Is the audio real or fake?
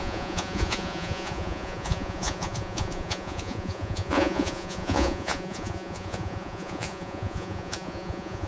fake